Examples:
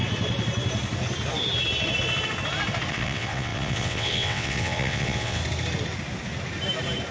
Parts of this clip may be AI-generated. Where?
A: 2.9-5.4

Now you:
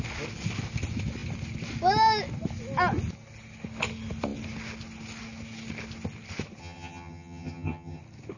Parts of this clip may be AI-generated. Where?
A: 6.6-8.0

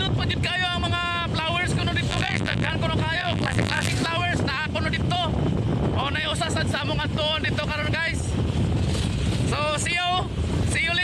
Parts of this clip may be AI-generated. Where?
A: 2.1-2.7; 3.2-3.9